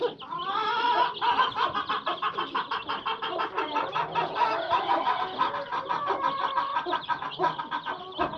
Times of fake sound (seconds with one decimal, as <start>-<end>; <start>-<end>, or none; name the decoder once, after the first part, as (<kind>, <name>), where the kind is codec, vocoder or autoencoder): 6.7-7.6 (vocoder, BigVGAN v2)